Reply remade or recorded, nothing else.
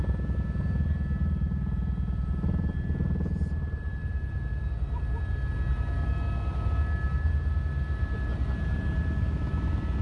recorded